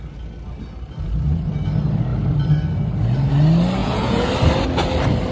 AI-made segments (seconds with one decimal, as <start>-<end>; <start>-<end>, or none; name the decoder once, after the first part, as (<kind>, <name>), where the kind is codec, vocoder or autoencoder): 3.8-4.3 (vocoder, Vocos)